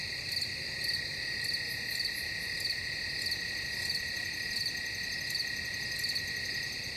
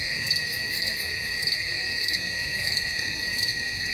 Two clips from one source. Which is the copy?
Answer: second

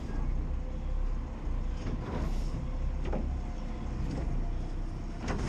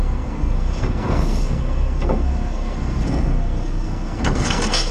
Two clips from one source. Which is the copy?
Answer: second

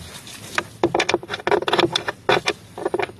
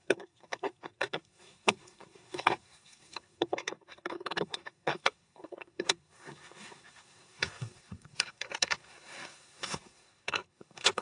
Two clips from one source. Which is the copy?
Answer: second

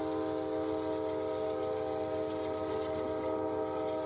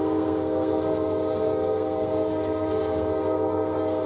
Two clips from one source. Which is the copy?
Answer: second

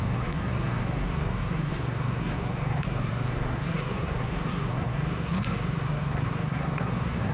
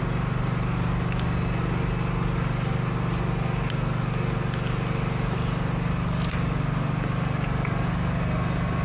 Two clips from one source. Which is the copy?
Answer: first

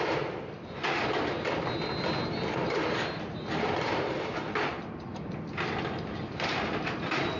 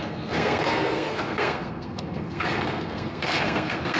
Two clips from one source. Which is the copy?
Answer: second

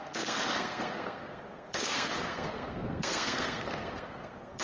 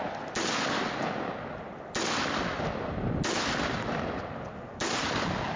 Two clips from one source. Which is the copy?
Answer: first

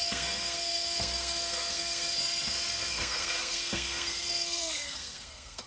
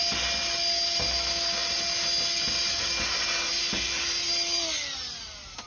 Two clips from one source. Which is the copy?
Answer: first